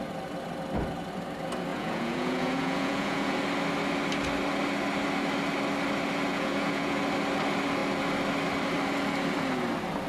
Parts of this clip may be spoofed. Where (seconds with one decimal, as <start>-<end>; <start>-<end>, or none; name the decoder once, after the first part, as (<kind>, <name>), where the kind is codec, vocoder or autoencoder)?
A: 1.7-3.4 (vocoder, Vocos); 6.3-7.0